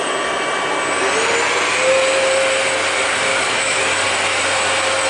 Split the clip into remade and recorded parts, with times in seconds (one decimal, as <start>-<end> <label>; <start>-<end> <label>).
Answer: 0.0-3.3 recorded; 3.3-3.8 remade; 3.8-5.1 recorded